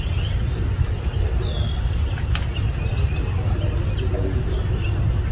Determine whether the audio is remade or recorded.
recorded